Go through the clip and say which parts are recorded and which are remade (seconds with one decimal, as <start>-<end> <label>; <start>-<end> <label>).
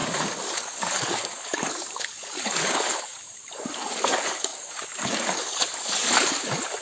0.0-6.8 remade